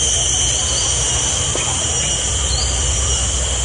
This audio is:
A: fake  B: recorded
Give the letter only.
A